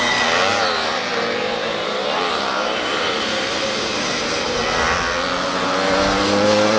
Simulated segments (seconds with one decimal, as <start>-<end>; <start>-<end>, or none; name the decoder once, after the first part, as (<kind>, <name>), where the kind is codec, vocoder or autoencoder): 0.5-4.6 (vocoder, BigVGAN v2)